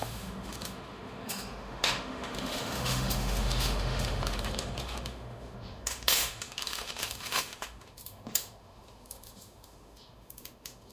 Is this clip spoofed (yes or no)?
yes